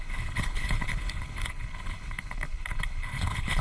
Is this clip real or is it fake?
fake